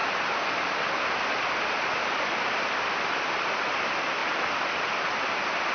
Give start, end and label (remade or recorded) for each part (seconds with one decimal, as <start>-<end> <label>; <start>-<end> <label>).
0.0-3.4 recorded; 3.4-5.7 remade

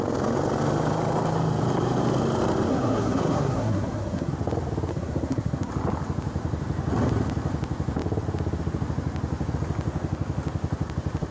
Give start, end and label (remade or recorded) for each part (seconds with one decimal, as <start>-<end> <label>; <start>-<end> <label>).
0.0-2.7 recorded; 2.7-4.3 remade; 4.3-4.9 recorded; 4.9-5.7 remade; 5.7-11.3 recorded

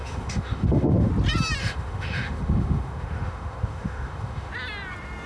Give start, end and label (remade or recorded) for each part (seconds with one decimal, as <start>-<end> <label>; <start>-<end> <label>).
0.0-1.1 remade; 1.1-1.6 recorded; 1.6-4.5 remade; 4.5-5.3 recorded

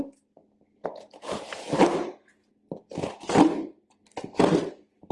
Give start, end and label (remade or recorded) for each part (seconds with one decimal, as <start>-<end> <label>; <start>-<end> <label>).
0.0-5.1 recorded

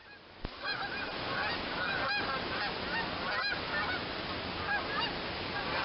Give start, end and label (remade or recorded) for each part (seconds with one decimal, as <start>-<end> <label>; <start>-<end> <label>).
0.0-5.8 recorded

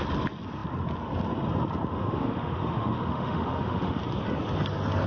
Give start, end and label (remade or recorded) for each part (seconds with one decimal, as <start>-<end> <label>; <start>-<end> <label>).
0.0-1.9 recorded; 1.9-4.0 remade; 4.0-5.1 recorded